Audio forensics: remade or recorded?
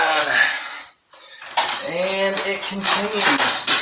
recorded